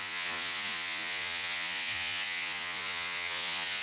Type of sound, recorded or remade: remade